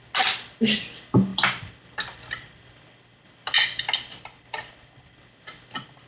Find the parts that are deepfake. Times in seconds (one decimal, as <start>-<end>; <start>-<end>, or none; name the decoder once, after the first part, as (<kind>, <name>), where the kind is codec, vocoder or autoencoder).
1.3-3.8 (vocoder, BigVGAN v2)